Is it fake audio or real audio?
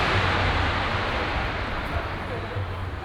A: real